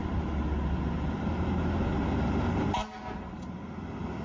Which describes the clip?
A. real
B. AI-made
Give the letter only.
A